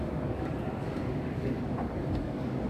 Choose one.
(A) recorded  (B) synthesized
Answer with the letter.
B